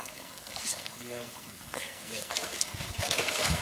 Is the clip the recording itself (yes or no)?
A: no